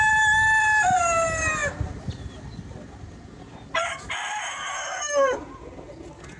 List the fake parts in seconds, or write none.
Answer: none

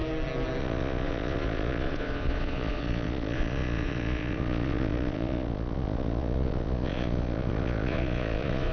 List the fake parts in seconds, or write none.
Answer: 0.6-8.7 (vocoder, Vocos)

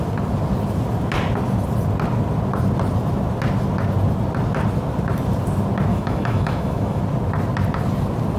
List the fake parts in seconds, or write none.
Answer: 5.9-7.0 (autoencoder, DAC-VAE)

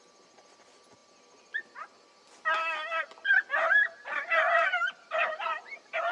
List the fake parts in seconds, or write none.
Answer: 3.5-6.1 (vocoder, BigVGAN v2)

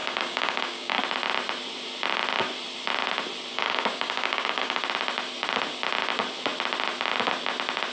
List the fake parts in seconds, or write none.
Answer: 0.0-1.0 (codec, DAC); 3.5-4.8

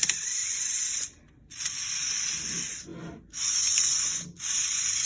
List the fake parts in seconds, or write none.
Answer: none

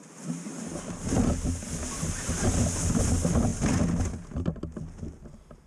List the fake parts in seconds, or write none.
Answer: none

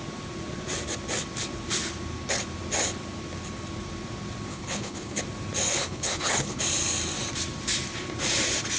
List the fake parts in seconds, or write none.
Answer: 4.5-5.2 (codec, HILCodec); 5.7-6.6